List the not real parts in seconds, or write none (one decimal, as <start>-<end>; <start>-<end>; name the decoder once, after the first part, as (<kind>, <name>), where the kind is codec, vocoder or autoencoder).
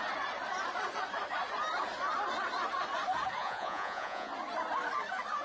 3.4-4.3 (vocoder, Vocos)